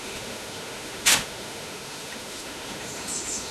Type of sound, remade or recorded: remade